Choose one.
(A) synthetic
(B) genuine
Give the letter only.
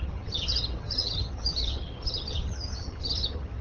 A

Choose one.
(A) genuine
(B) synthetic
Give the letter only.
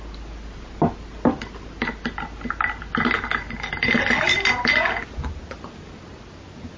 A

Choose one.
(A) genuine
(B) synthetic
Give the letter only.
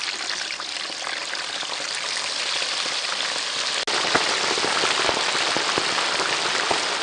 A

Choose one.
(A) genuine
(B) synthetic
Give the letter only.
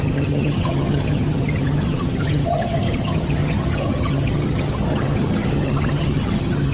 B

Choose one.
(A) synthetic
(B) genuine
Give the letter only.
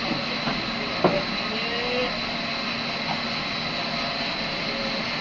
B